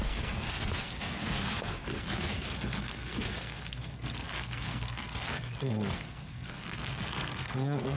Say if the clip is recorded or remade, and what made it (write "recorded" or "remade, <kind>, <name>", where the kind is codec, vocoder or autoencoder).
remade, codec, SNAC